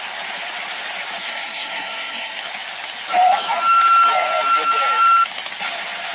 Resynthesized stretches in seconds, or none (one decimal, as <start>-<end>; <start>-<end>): 1.2-2.4